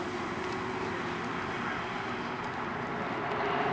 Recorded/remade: recorded